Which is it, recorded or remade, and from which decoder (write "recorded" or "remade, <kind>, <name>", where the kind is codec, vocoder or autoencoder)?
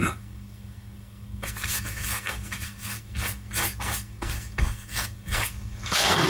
remade, codec, SNAC